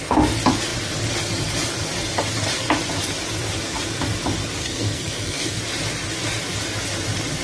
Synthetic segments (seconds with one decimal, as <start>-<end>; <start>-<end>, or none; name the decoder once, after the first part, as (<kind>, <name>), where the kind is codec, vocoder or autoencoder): 4.6-5.6 (codec, SNAC)